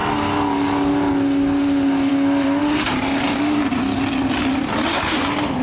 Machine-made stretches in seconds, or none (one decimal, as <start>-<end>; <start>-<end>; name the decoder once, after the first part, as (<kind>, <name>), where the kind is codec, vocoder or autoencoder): 2.6-3.8 (vocoder, BigVGAN v2)